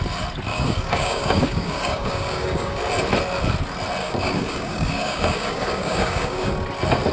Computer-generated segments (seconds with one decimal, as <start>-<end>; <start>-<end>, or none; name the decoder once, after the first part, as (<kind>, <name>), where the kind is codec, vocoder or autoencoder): 0.5-2.8 (codec, DAC); 4.0-6.5